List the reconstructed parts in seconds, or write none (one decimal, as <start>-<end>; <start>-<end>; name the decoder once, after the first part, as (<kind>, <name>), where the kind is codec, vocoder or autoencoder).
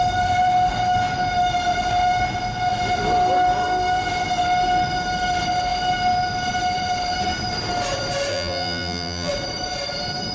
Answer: 8.3-9.3 (vocoder, BigVGAN v2)